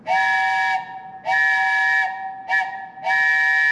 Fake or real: real